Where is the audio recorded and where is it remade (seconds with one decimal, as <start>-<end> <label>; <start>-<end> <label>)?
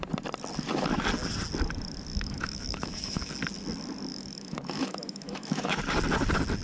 0.0-2.1 recorded; 2.1-3.3 remade; 3.3-4.1 recorded; 4.1-5.8 remade; 5.8-6.6 recorded